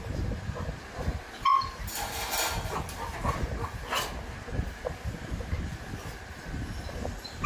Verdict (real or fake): real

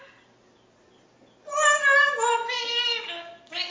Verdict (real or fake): real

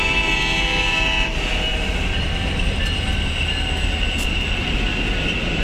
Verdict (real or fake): real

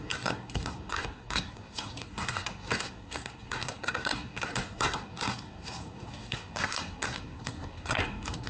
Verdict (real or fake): fake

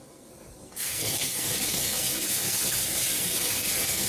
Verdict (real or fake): fake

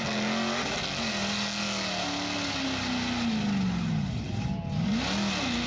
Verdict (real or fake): real